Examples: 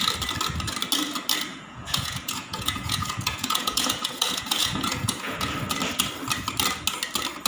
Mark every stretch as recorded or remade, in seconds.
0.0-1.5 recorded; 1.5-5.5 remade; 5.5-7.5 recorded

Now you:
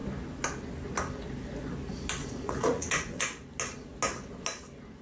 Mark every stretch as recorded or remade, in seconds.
0.0-2.2 recorded; 2.2-3.2 remade; 3.2-5.0 recorded

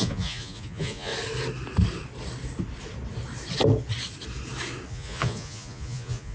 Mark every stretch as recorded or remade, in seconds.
0.0-1.1 remade; 1.1-4.9 recorded; 4.9-6.3 remade

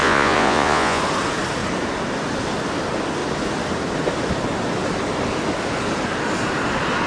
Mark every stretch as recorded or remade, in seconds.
0.0-1.0 remade; 1.0-7.1 recorded

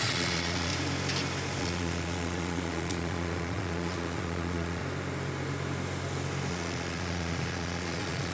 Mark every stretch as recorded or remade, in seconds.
0.0-0.7 remade; 0.7-1.6 recorded; 1.6-4.8 remade; 4.8-6.5 recorded; 6.5-8.3 remade

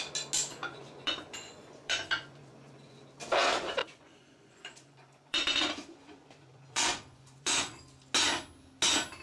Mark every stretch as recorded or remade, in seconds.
0.0-0.5 recorded; 0.5-3.0 remade; 3.0-3.8 recorded; 3.8-7.8 remade; 7.8-9.2 recorded

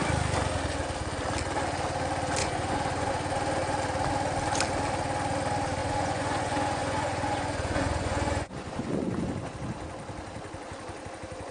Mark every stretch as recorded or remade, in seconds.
0.0-2.4 recorded; 2.4-3.1 remade; 3.1-5.8 recorded; 5.8-9.5 remade; 9.5-11.5 recorded

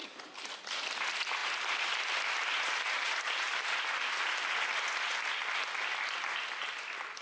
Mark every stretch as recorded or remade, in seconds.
0.0-7.2 recorded